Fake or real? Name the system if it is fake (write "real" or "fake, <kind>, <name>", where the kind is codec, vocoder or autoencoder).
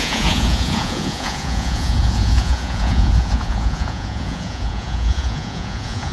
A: fake, vocoder, Vocos